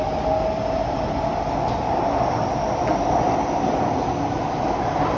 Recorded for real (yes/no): yes